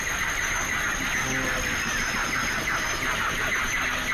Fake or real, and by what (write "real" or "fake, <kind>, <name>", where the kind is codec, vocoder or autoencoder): real